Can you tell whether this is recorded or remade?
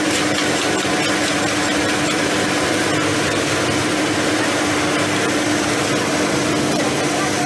recorded